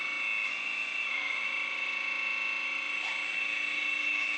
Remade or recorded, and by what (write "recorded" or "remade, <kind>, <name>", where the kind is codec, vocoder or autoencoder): recorded